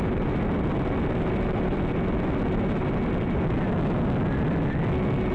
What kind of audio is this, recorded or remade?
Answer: recorded